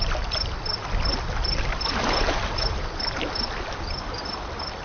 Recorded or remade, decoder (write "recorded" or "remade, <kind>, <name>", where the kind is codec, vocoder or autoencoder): recorded